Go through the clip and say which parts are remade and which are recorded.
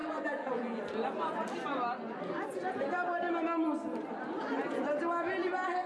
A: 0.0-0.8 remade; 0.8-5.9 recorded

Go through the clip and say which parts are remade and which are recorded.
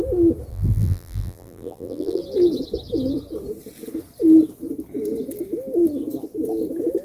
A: 0.0-0.5 recorded; 0.5-2.2 remade; 2.2-7.0 recorded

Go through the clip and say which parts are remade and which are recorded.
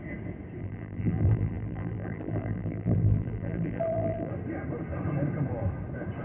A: 0.0-0.6 recorded; 0.6-4.3 remade; 4.3-6.2 recorded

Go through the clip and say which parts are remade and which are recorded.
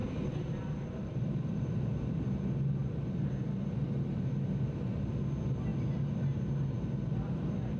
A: 0.0-1.8 remade; 1.8-2.8 recorded; 2.8-3.4 remade; 3.4-7.8 recorded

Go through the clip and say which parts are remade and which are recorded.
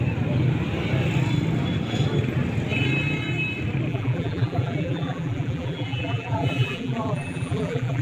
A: 0.0-3.9 recorded; 3.9-8.0 remade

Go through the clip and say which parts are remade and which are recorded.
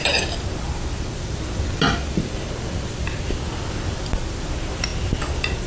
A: 0.0-1.1 remade; 1.1-2.0 recorded; 2.0-3.6 remade; 3.6-5.7 recorded